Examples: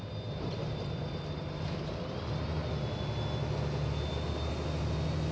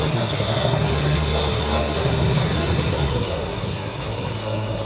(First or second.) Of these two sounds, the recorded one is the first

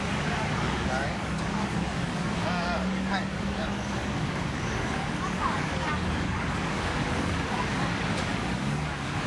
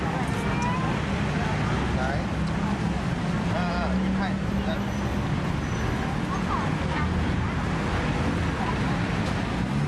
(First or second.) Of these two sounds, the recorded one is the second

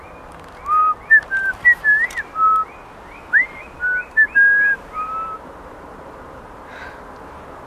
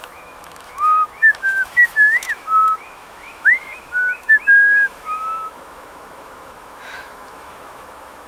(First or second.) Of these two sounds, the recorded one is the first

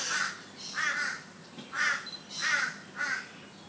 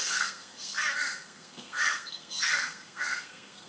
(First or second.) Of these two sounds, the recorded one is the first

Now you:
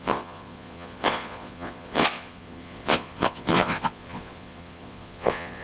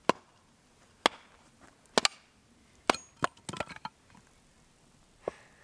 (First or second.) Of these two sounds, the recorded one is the second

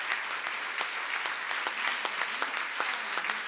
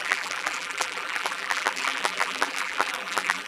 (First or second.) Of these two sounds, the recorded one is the first